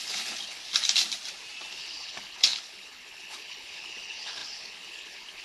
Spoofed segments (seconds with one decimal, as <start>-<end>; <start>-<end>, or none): 0.0-0.6; 1.7-5.4